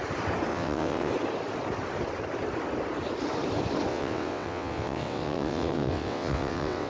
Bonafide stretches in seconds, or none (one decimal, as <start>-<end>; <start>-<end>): 0.0-0.5; 1.1-3.9